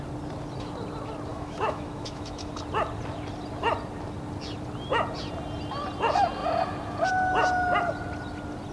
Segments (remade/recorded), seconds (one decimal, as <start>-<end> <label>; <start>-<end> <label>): 0.0-1.3 recorded; 1.3-2.5 remade; 2.5-8.7 recorded

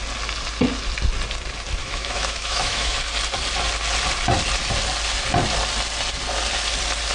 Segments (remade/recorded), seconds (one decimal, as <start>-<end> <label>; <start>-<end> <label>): 0.0-1.8 recorded; 1.8-3.0 remade; 3.0-7.1 recorded

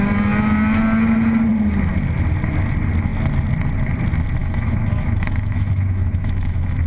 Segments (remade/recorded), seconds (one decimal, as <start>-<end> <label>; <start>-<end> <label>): 0.0-4.4 recorded; 4.4-6.9 remade

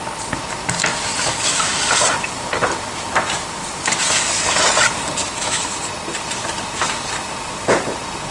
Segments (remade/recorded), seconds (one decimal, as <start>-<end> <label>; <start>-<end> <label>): 0.0-5.2 recorded; 5.2-5.7 remade; 5.7-8.3 recorded

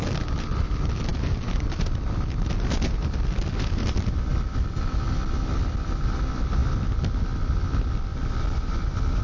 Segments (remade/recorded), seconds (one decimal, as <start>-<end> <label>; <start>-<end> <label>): 0.0-9.2 recorded

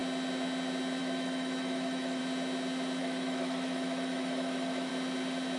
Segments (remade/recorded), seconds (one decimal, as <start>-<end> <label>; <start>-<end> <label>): 0.0-1.0 recorded; 1.0-2.2 remade; 2.2-3.0 recorded; 3.0-4.9 remade; 4.9-5.6 recorded